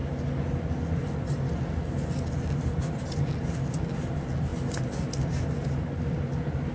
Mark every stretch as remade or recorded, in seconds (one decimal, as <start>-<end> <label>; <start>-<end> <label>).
0.0-6.7 recorded